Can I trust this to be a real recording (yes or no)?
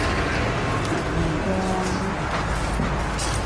yes